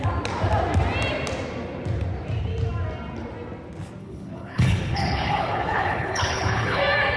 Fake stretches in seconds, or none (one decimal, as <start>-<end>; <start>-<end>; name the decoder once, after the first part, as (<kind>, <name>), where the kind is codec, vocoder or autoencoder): 4.0-6.8 (codec, HILCodec)